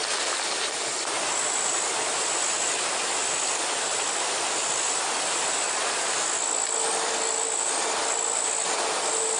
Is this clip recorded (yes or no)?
yes